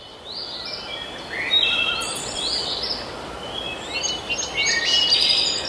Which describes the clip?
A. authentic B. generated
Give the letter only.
A